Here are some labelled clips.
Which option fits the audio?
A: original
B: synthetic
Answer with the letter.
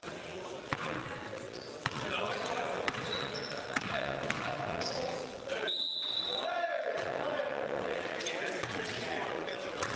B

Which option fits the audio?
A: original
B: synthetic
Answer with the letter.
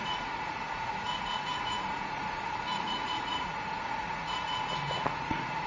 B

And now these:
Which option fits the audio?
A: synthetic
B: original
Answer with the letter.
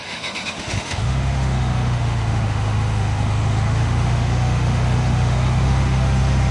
A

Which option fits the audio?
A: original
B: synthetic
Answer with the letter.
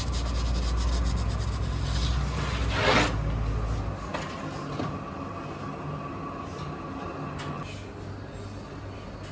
A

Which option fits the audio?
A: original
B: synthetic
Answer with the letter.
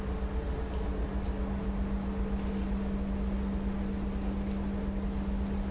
A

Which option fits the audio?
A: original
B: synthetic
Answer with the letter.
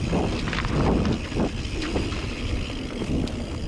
A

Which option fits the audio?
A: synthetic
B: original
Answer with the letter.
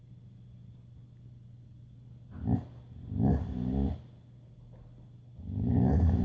B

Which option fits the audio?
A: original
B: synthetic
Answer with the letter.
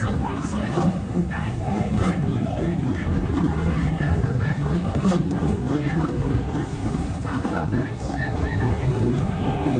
B